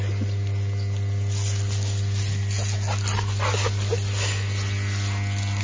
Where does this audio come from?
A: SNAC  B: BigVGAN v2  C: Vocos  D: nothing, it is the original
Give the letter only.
D